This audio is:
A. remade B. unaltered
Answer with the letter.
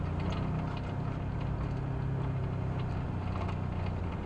B